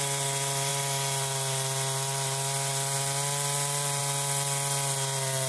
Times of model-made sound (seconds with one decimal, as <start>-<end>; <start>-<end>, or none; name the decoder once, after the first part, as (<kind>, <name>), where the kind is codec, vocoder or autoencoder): none